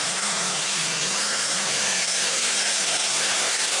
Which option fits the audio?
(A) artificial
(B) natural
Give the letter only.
A